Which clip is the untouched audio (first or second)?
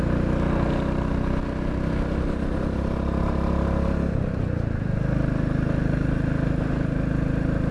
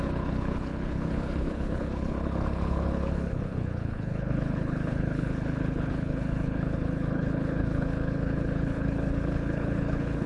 first